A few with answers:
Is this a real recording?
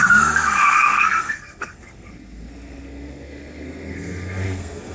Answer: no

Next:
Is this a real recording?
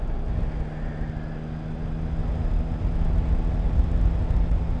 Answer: yes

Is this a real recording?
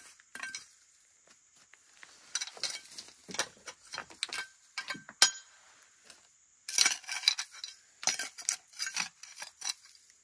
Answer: yes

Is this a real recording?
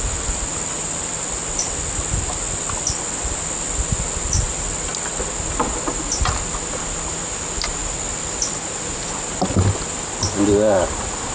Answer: yes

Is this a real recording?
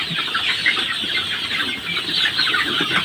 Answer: yes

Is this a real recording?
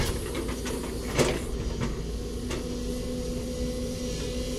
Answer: yes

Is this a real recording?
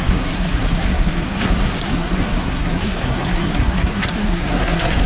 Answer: no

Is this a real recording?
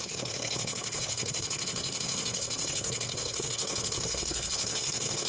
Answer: no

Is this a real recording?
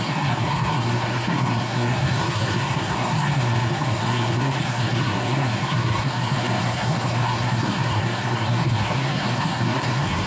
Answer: no